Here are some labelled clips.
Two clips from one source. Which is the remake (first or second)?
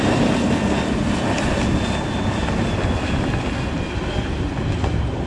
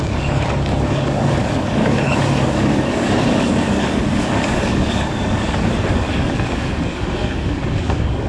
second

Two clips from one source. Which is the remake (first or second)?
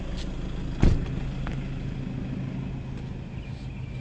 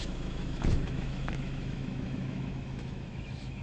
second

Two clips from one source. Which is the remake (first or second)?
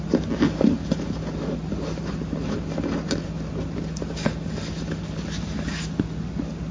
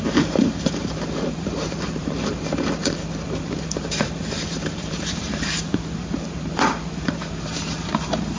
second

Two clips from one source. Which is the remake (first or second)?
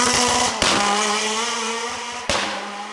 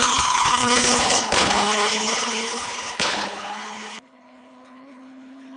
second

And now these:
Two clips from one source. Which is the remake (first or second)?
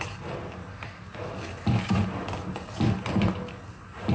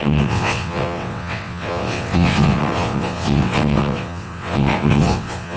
second